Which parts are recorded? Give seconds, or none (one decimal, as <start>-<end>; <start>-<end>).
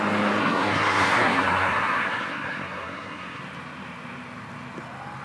0.0-0.4; 3.4-5.2